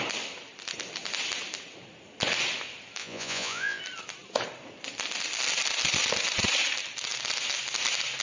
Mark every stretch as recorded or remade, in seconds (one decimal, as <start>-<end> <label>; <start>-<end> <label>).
0.0-3.0 recorded; 3.0-3.8 remade; 3.8-8.2 recorded